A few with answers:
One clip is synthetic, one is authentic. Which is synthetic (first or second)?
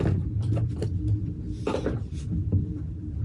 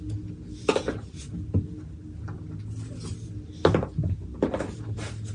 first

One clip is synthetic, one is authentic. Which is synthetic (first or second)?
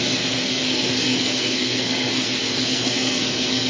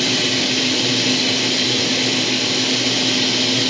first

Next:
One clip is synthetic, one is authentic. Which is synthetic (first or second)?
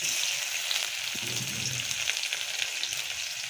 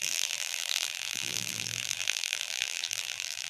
second